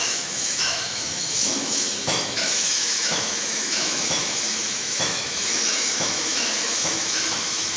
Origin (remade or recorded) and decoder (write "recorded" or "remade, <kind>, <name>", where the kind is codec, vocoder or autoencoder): remade, autoencoder, DAC-VAE